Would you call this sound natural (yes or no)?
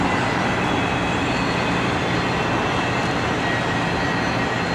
yes